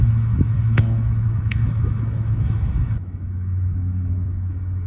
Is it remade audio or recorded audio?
remade